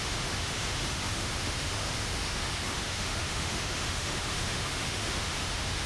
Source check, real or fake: fake